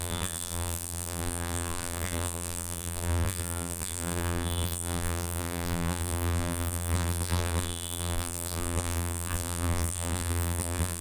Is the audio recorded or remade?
remade